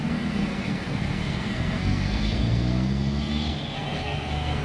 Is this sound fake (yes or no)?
yes